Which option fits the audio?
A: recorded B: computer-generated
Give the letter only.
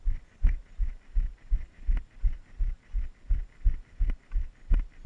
A